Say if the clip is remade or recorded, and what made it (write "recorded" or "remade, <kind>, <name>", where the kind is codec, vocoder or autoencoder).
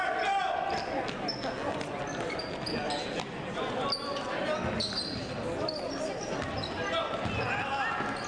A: recorded